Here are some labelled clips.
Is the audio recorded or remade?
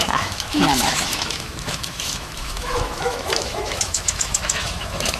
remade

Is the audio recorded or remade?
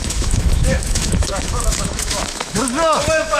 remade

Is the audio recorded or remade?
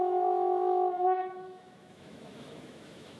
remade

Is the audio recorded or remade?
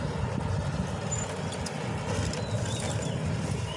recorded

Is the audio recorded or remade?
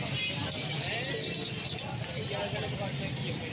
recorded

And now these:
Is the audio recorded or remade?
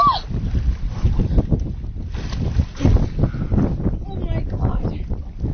recorded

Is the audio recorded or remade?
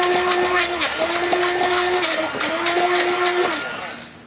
recorded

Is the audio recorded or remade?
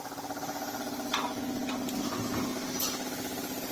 recorded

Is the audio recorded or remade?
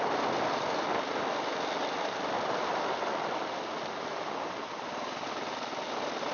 recorded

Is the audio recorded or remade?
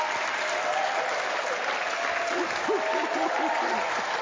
recorded